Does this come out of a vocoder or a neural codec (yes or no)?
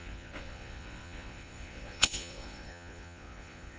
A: yes